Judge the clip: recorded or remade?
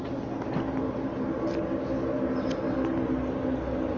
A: recorded